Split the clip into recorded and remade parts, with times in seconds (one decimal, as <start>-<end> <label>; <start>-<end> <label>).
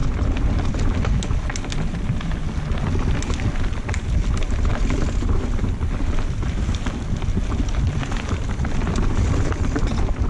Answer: 0.0-10.3 recorded